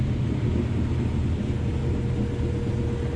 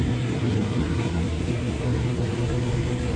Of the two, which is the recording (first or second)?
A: first